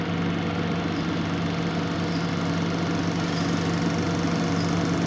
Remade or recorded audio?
recorded